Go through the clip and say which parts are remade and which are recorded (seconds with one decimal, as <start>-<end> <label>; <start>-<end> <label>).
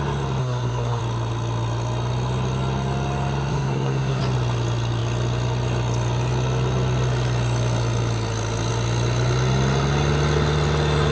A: 0.0-0.4 recorded; 0.4-1.0 remade; 1.0-3.5 recorded; 3.5-4.2 remade; 4.2-11.1 recorded